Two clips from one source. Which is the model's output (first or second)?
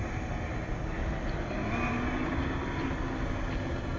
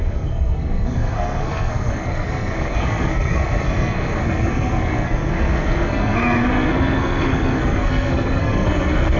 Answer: second